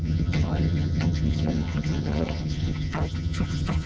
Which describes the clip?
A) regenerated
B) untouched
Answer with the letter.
A